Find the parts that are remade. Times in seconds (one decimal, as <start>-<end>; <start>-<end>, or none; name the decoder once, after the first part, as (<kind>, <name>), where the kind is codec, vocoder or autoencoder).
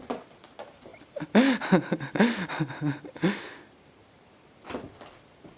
none